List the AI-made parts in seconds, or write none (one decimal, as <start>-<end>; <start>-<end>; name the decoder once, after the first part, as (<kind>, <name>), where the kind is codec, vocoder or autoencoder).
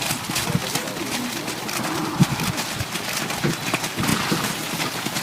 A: none